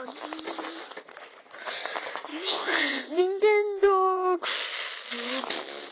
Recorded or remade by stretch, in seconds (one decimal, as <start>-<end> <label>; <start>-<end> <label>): 0.0-2.3 recorded; 2.3-3.2 remade; 3.2-3.8 recorded; 3.8-4.4 remade; 4.4-5.9 recorded